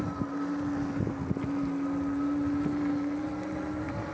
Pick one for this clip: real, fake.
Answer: real